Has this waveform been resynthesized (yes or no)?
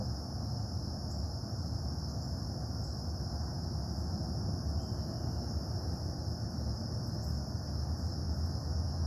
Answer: no